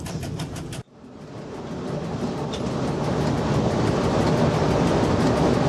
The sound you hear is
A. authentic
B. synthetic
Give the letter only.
A